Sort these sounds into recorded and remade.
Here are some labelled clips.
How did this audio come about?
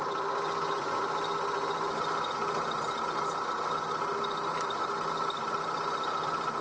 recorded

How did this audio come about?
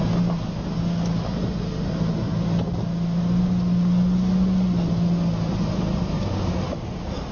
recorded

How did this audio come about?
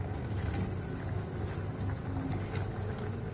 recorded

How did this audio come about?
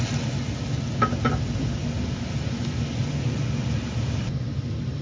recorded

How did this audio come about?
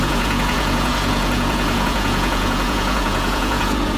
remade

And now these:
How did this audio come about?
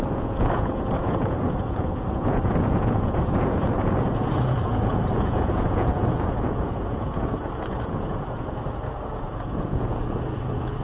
remade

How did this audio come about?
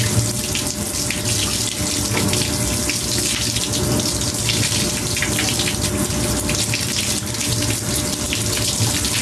recorded